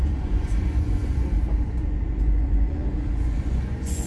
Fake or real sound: fake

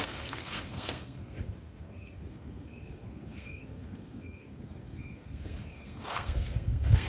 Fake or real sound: fake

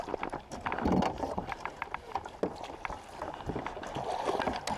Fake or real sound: real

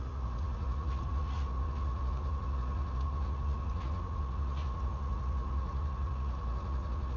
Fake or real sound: fake